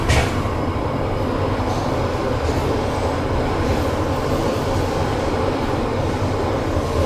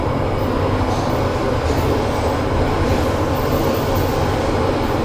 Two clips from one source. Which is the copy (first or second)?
first